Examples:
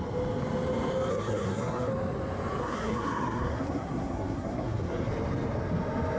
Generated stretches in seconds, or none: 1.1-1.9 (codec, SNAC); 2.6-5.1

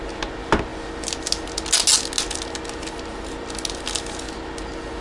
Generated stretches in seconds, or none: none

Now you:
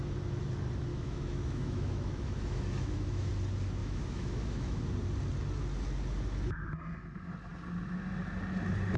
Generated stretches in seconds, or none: 0.9-3.3 (autoencoder, DAC-VAE); 3.8-4.8

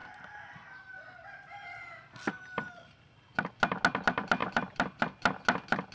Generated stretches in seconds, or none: 4.4-5.0 (vocoder, BigVGAN v2)

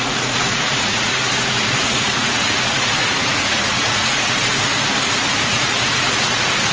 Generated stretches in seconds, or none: 0.0-4.4 (vocoder, Vocos); 5.4-6.7